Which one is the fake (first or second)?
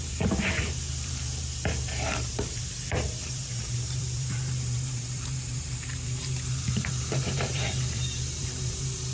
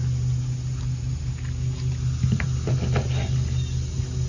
first